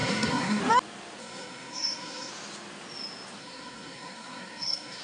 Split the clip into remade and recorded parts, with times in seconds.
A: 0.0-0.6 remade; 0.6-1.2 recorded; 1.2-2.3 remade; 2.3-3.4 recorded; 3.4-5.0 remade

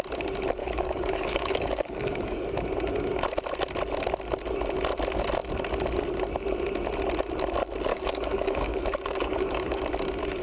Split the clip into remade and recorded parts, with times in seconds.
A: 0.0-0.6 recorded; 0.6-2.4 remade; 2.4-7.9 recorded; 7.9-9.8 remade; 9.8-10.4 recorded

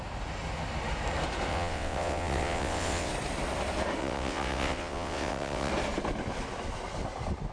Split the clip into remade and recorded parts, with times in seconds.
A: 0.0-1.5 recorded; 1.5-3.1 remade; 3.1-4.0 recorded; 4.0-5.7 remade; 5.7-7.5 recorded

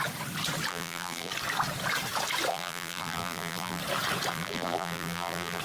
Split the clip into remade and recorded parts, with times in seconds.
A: 0.0-0.7 recorded; 0.7-1.3 remade; 1.3-2.5 recorded; 2.5-3.8 remade; 3.8-4.3 recorded; 4.3-5.6 remade